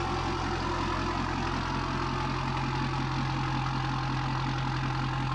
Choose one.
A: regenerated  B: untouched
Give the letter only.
B